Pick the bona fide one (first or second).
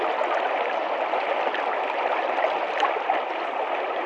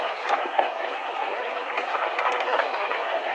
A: first